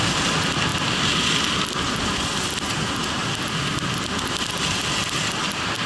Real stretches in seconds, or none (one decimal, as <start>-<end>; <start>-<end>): 0.0-5.9